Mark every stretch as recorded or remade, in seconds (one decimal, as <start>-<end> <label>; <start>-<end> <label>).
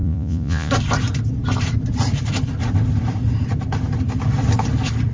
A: 0.0-0.7 remade; 0.7-5.1 recorded